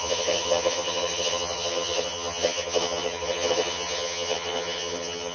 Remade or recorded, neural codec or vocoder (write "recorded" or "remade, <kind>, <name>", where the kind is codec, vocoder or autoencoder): remade, vocoder, HiFi-GAN